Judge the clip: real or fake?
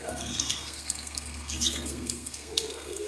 fake